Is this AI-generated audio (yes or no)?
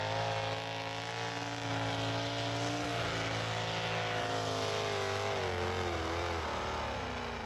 no